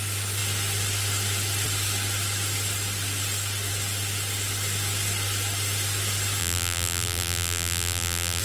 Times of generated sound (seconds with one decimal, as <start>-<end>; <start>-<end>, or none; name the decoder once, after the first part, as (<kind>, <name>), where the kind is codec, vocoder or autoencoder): 6.4-8.4 (vocoder, BigVGAN v2)